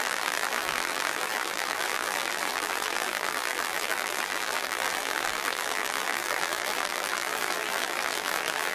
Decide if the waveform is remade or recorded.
remade